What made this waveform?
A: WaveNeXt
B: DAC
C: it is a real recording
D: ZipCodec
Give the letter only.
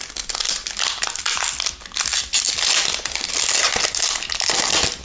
C